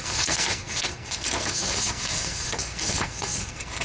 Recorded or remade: remade